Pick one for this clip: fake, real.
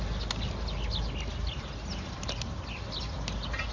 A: real